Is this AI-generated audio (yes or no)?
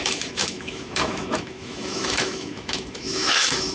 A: yes